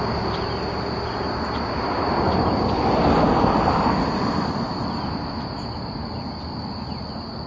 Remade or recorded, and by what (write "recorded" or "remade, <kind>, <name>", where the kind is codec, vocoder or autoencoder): recorded